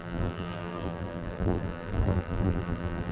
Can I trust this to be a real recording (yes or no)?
no